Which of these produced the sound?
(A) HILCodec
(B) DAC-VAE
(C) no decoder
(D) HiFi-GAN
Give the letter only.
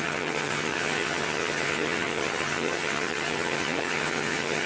D